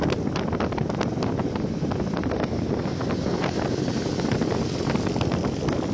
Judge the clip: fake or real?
real